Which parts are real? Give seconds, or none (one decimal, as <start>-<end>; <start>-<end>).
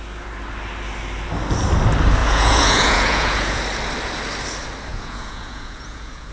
0.0-2.2; 3.6-4.9